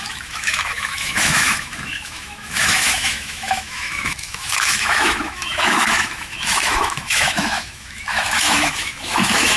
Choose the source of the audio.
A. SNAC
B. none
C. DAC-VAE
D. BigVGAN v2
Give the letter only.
C